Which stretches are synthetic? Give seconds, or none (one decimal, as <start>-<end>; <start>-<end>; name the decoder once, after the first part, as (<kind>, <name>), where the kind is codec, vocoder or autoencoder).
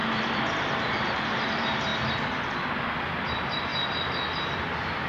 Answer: 0.0-1.9 (vocoder, BigVGAN v2); 3.1-3.7; 4.6-5.1